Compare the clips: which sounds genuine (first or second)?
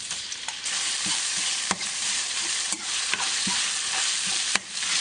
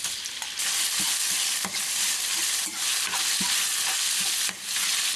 second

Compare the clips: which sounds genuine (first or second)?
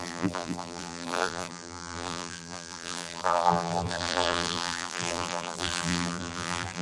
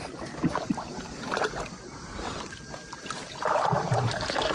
second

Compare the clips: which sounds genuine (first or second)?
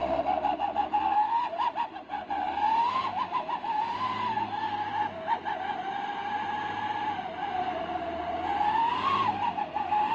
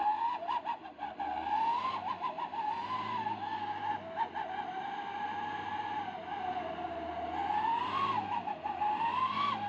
second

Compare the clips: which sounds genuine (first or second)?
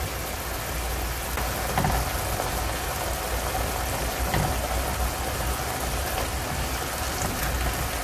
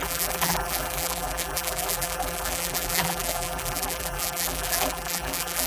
first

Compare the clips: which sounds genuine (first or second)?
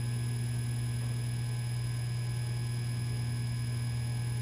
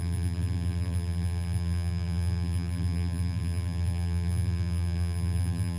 first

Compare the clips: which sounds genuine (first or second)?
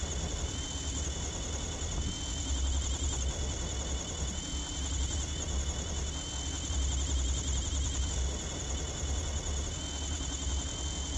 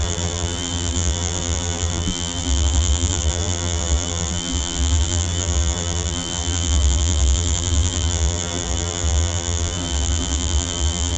first